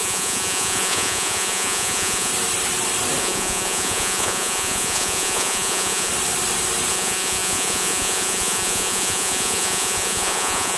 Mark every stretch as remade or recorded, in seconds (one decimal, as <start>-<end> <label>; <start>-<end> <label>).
0.0-2.3 remade; 2.3-3.2 recorded; 3.2-6.1 remade; 6.1-6.9 recorded; 6.9-10.8 remade